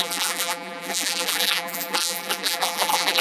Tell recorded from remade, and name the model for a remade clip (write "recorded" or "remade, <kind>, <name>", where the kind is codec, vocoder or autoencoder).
remade, vocoder, BigVGAN v2